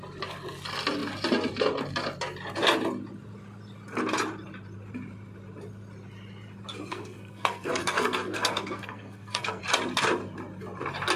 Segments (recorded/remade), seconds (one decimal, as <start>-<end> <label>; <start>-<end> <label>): 0.0-6.9 recorded; 6.9-9.6 remade; 9.6-11.2 recorded

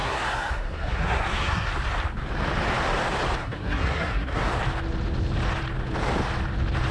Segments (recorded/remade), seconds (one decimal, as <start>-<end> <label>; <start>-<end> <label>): 0.0-1.7 remade; 1.7-3.4 recorded; 3.4-4.5 remade; 4.5-6.9 recorded

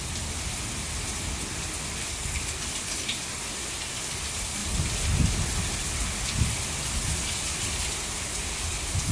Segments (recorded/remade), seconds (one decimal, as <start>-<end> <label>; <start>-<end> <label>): 0.0-2.0 recorded; 2.0-2.6 remade; 2.6-9.1 recorded